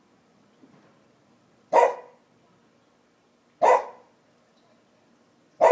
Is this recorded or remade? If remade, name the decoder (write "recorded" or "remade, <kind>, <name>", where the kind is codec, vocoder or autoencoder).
remade, vocoder, BigVGAN v2